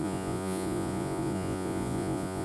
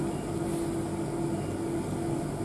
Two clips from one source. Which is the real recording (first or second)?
second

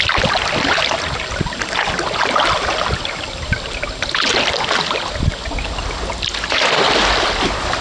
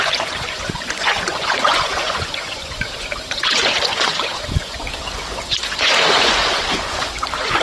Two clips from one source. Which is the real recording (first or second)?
first